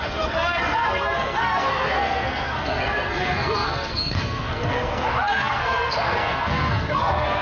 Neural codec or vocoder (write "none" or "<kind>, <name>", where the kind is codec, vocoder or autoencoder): codec, SNAC